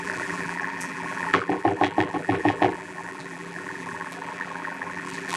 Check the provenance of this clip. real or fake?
fake